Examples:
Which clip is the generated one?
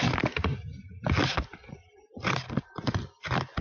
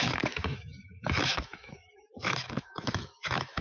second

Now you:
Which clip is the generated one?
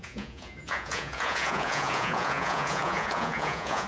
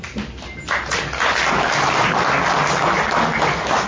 first